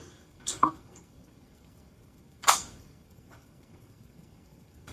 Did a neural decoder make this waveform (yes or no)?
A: yes